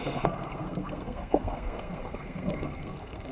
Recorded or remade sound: remade